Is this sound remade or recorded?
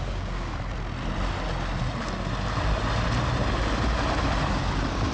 recorded